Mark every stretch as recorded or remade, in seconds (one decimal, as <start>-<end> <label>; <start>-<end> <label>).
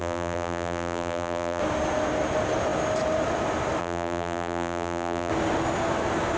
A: 0.0-1.6 remade; 1.6-3.8 recorded; 3.8-5.3 remade; 5.3-6.4 recorded